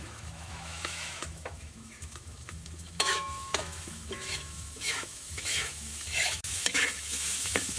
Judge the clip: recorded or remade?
remade